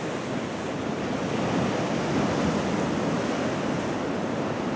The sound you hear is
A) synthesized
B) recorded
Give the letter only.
B